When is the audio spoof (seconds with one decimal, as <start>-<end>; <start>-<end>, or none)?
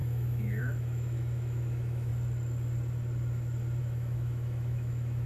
0.0-2.1; 3.8-5.3